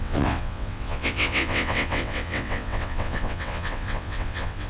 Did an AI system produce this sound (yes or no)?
yes